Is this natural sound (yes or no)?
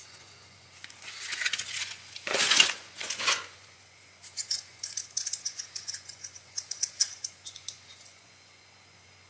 no